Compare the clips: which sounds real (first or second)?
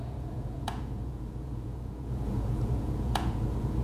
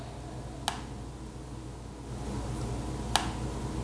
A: second